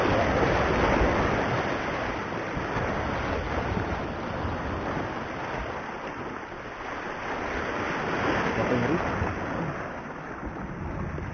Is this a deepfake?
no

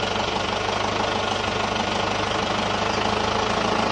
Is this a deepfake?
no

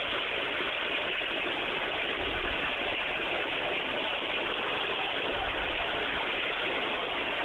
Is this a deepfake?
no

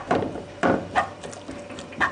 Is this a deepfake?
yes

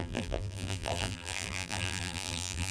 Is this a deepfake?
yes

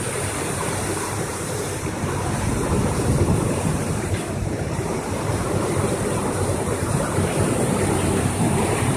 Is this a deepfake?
yes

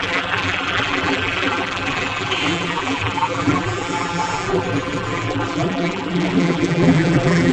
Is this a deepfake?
yes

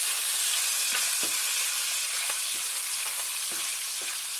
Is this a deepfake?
yes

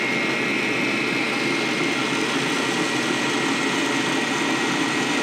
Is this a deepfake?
no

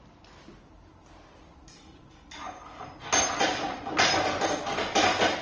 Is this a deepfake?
no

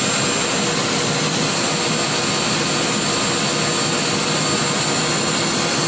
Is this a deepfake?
no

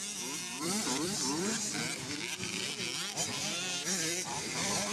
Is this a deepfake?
yes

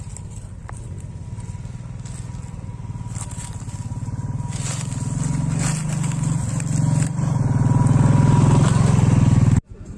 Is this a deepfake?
no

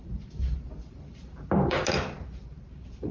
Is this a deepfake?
yes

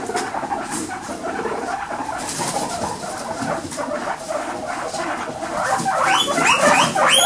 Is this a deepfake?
no